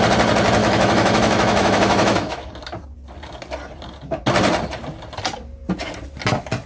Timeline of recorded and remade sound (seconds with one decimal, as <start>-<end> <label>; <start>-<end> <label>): 0.0-0.6 recorded; 0.6-2.5 remade; 2.5-6.7 recorded